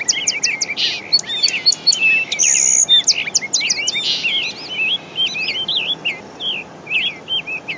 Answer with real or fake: real